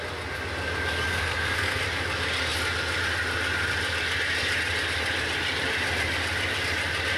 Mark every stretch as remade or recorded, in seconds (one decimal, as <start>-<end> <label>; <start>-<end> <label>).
0.0-1.1 recorded; 1.1-1.8 remade; 1.8-7.2 recorded